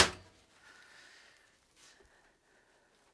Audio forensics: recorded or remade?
recorded